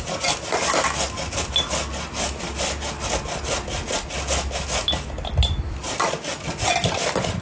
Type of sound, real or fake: real